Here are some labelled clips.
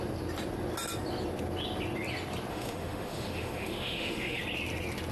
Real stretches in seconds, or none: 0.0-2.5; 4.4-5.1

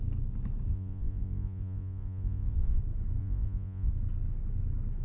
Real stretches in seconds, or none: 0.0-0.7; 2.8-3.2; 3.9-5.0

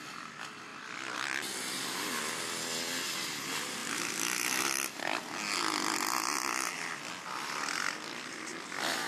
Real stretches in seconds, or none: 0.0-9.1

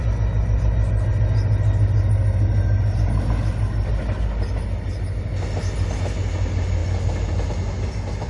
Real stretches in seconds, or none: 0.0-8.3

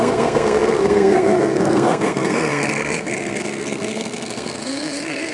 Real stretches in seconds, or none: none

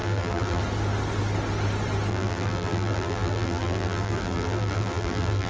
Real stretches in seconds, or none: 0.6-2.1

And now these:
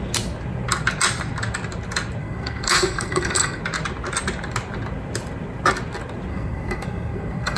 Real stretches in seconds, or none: 0.0-2.2; 3.6-6.3

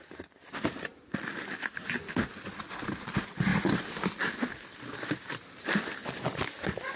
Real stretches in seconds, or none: 0.0-7.0